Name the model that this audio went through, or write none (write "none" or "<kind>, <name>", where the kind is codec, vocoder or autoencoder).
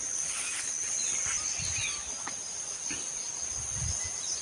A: none